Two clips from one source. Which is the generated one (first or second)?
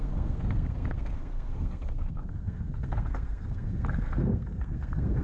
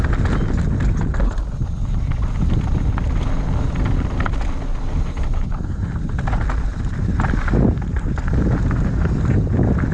first